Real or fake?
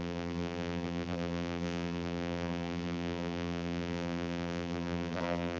fake